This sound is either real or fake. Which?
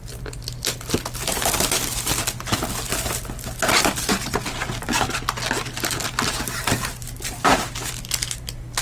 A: real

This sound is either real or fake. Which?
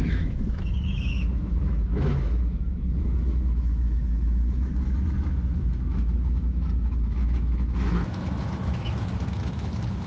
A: fake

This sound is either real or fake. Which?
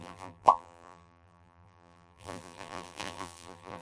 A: fake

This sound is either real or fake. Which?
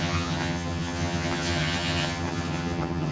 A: fake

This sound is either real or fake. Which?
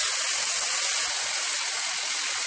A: real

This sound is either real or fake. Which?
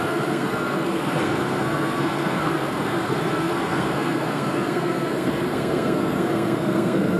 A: fake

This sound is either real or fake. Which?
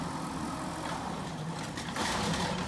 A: real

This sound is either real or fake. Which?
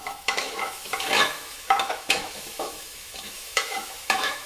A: fake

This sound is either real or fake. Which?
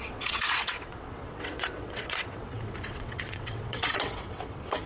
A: fake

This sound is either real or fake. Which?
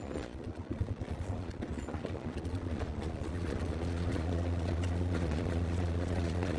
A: fake